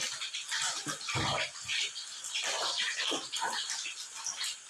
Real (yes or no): yes